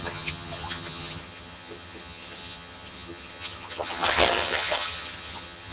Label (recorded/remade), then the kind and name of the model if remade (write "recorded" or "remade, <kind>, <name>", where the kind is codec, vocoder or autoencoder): remade, vocoder, HiFi-GAN